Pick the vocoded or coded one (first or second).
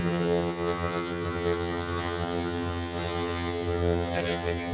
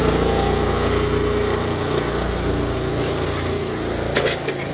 first